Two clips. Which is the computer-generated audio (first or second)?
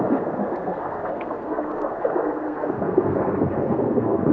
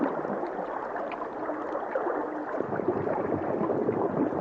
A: first